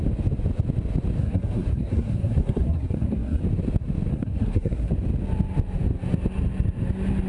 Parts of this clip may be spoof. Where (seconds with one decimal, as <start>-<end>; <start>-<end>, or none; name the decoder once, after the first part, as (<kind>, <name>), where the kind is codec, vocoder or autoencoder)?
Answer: 1.2-3.4 (codec, SNAC); 4.1-4.9